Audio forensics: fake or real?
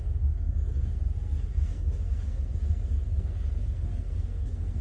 fake